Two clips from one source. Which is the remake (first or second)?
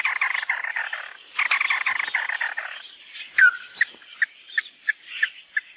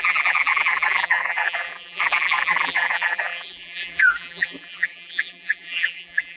second